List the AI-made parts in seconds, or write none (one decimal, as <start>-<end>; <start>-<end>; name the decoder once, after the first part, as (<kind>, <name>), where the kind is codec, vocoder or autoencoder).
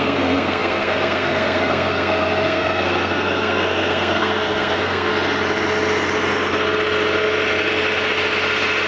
0.0-5.1 (codec, SNAC)